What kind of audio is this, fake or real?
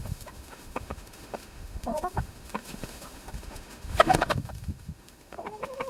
fake